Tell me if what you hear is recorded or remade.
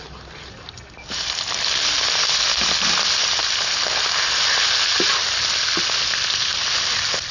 recorded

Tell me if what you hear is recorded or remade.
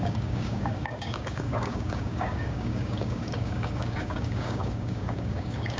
remade